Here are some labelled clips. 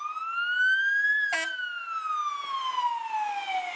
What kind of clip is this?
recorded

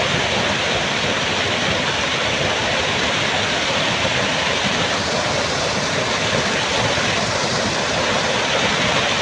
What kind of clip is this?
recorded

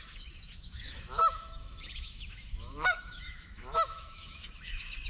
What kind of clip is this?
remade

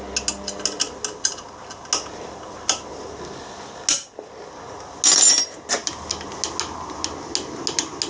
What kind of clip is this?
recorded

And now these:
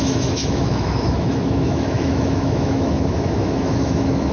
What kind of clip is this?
remade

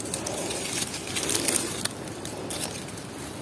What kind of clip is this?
recorded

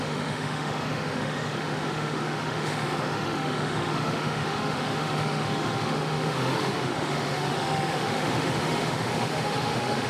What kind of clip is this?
remade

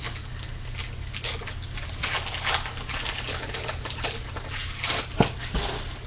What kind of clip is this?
recorded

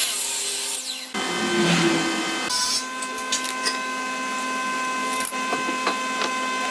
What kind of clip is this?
recorded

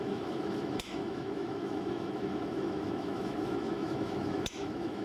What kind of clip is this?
remade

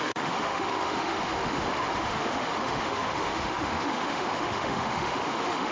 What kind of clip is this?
remade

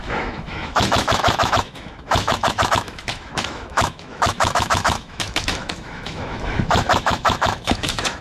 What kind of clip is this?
remade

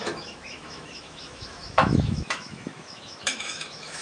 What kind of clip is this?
remade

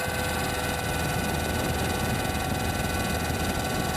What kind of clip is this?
recorded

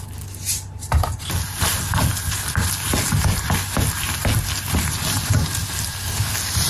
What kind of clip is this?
recorded